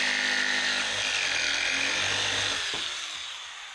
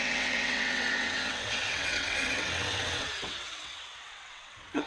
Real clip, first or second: first